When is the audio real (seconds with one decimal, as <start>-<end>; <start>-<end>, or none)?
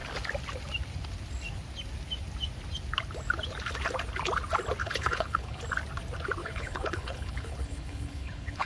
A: 0.0-4.8; 5.6-6.4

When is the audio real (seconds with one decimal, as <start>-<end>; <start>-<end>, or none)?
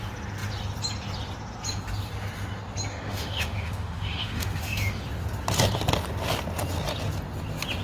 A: 0.0-2.9; 5.0-7.8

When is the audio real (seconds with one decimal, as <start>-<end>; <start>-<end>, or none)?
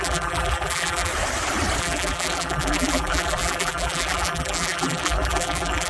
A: 1.1-1.8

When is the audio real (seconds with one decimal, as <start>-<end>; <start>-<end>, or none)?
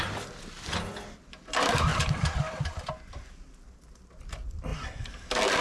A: 0.0-1.9; 2.9-5.6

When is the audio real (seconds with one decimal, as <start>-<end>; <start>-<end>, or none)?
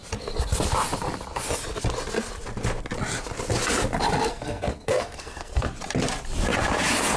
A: 0.0-4.3; 5.7-7.2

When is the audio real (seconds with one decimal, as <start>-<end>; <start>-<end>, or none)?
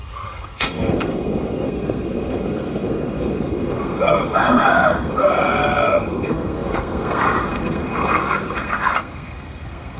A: none